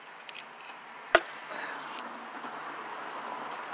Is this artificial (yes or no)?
no